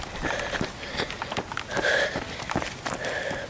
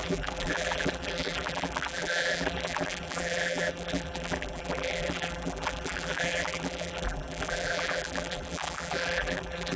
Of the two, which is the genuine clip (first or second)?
first